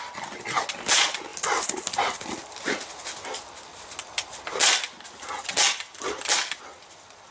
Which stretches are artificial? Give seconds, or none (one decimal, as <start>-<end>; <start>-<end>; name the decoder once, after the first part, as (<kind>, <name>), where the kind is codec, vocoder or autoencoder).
none